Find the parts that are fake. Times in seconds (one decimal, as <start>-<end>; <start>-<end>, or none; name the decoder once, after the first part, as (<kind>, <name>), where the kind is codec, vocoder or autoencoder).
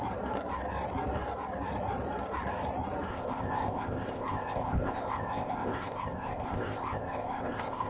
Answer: 3.1-7.9 (codec, ZipCodec)